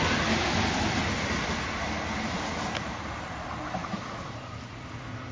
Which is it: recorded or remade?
recorded